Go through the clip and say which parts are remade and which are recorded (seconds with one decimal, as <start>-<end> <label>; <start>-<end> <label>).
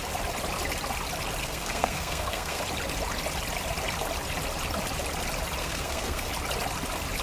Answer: 0.0-1.4 recorded; 1.4-2.6 remade; 2.6-5.6 recorded; 5.6-6.3 remade; 6.3-7.2 recorded